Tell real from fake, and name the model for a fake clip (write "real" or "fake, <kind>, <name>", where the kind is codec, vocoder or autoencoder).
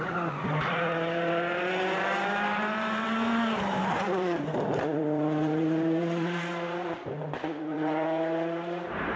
fake, vocoder, BigVGAN v2